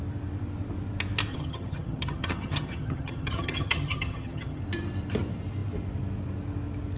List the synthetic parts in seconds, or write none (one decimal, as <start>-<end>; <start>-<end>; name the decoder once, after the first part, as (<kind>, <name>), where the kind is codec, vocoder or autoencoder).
1.3-4.6 (vocoder, HiFi-GAN)